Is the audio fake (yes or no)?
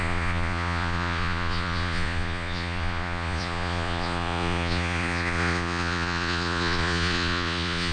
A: yes